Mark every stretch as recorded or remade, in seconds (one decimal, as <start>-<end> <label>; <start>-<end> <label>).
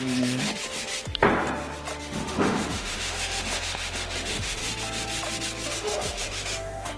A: 0.0-0.5 remade; 0.5-2.0 recorded; 2.0-4.6 remade; 4.6-5.7 recorded; 5.7-7.0 remade